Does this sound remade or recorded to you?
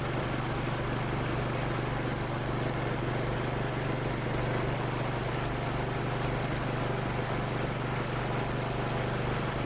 recorded